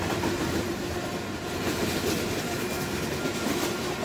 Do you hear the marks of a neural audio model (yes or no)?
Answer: no